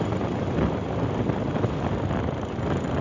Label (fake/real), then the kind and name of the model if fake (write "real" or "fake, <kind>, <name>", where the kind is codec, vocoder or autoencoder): real